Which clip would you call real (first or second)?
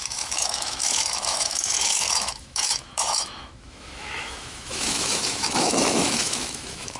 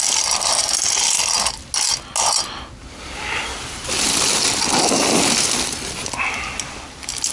second